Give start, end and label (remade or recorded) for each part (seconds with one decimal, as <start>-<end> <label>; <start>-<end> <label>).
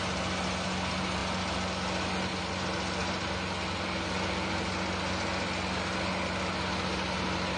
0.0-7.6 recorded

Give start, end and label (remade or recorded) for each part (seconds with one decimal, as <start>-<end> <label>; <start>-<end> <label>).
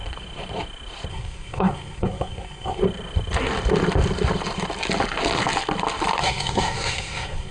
0.0-1.1 recorded; 1.1-2.8 remade; 2.8-6.2 recorded; 6.2-7.5 remade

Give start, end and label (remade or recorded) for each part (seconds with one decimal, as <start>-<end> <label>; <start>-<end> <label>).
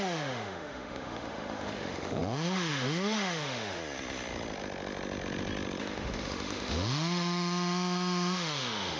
0.0-3.8 remade; 3.8-5.8 recorded; 5.8-9.0 remade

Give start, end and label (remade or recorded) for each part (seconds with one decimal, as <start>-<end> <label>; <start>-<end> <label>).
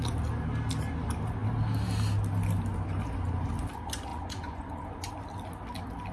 0.0-4.1 recorded; 4.1-5.1 remade; 5.1-6.1 recorded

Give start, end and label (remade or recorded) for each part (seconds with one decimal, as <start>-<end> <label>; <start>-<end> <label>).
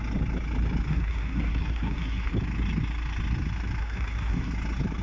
0.0-0.9 recorded; 0.9-2.3 remade; 2.3-3.8 recorded; 3.8-4.5 remade; 4.5-5.0 recorded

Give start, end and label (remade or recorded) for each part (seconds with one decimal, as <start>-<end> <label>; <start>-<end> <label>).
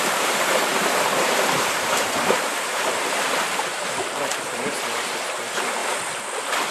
0.0-4.3 remade; 4.3-4.9 recorded; 4.9-5.8 remade; 5.8-6.7 recorded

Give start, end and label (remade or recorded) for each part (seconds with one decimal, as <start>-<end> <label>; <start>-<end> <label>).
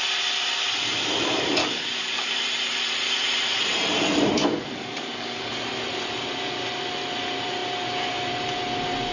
0.0-1.6 recorded; 1.6-2.3 remade; 2.3-4.4 recorded; 4.4-5.5 remade; 5.5-9.1 recorded